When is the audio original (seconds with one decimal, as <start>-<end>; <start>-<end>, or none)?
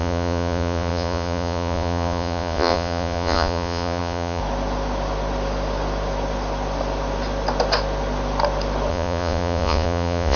4.4-8.9